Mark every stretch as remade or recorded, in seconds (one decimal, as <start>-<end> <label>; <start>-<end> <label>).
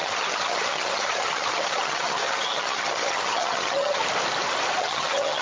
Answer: 0.0-4.0 remade; 4.0-4.8 recorded; 4.8-5.4 remade